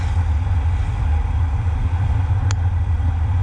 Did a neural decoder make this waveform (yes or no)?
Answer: no